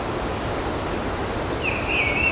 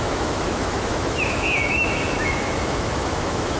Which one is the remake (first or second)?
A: second